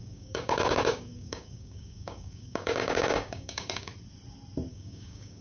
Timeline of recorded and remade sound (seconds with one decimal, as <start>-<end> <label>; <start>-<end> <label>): 0.0-3.9 remade; 3.9-4.7 recorded; 4.7-5.4 remade